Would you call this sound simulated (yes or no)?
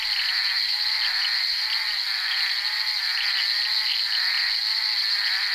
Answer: no